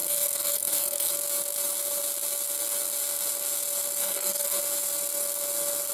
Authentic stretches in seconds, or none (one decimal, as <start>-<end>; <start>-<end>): 1.1-4.0; 4.6-5.9